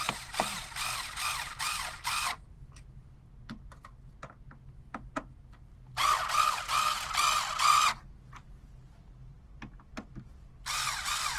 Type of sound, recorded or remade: recorded